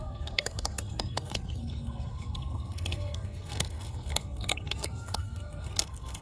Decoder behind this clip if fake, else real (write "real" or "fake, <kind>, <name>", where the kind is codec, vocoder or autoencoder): fake, codec, SNAC